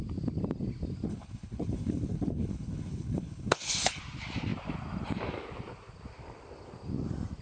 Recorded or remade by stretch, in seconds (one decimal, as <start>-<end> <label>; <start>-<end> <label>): 0.0-1.1 recorded; 1.1-4.0 remade; 4.0-7.4 recorded